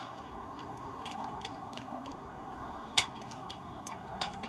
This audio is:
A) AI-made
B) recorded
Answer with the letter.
A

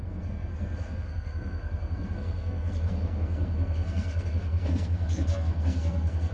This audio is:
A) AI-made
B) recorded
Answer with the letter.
A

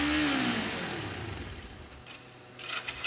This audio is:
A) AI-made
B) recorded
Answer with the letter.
B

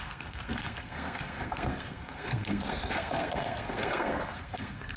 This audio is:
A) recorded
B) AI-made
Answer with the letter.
B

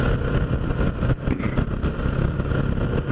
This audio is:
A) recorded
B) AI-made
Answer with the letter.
A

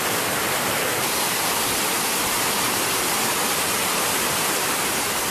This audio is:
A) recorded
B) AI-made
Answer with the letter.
A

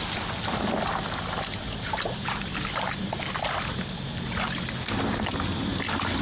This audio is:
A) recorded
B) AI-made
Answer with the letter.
A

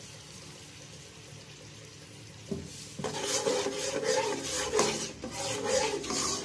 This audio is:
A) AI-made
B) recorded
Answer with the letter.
B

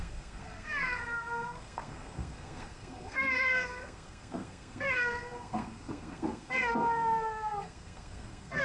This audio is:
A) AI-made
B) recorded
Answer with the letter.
A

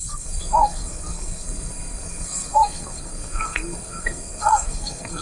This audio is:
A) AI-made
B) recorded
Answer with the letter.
A